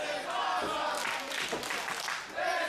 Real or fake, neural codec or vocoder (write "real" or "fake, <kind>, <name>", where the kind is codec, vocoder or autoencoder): real